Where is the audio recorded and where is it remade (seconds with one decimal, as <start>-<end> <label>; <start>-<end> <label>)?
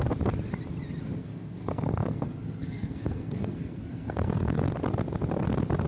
0.0-1.2 recorded; 1.2-4.7 remade; 4.7-5.9 recorded